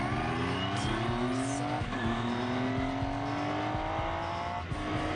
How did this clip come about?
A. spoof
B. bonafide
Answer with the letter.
B